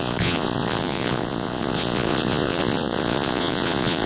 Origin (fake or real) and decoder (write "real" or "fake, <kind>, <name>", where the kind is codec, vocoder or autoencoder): fake, vocoder, Vocos